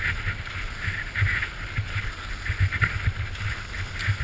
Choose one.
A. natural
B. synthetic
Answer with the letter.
A